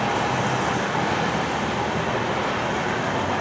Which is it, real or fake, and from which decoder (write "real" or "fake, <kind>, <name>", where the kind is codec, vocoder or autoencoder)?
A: real